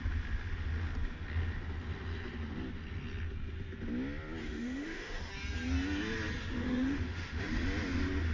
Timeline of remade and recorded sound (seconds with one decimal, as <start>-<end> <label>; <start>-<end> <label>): 0.0-4.4 recorded; 4.4-5.3 remade; 5.3-6.4 recorded; 6.4-7.4 remade; 7.4-8.3 recorded